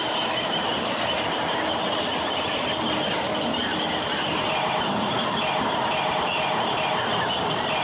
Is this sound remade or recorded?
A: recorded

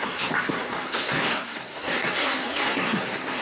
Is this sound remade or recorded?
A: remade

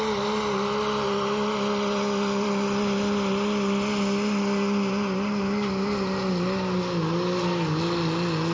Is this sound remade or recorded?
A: recorded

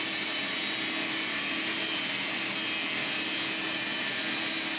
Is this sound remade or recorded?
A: recorded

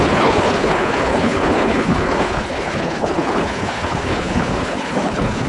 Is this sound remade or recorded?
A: remade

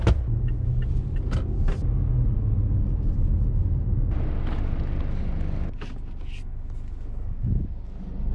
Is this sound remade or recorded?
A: recorded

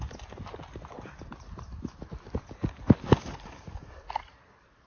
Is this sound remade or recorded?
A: recorded